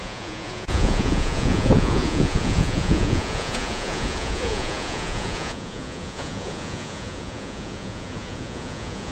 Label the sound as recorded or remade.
remade